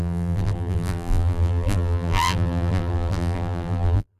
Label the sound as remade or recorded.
remade